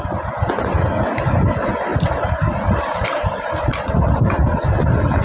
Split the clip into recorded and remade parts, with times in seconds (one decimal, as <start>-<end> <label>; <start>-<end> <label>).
0.0-1.9 recorded; 1.9-3.6 remade; 3.6-5.2 recorded